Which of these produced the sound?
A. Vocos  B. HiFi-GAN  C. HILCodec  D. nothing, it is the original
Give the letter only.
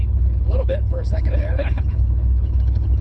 C